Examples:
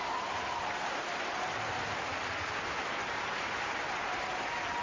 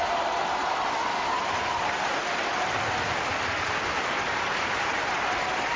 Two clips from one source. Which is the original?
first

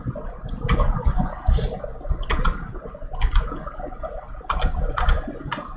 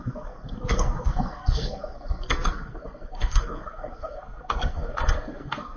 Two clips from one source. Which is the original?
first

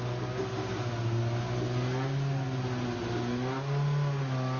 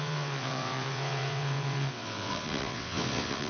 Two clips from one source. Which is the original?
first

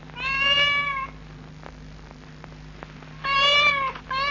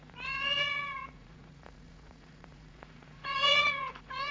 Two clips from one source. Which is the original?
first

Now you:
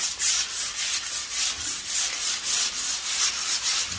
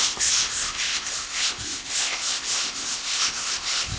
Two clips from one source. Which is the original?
first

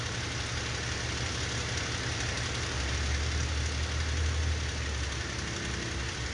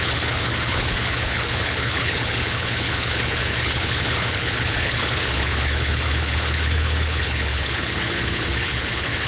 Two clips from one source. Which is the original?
first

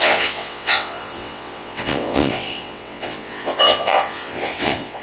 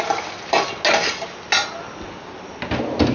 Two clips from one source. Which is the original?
second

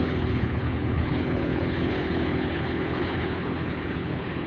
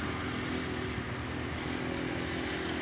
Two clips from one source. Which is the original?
second